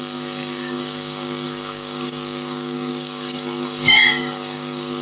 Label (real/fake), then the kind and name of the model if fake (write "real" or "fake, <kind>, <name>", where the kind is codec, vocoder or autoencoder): fake, codec, DAC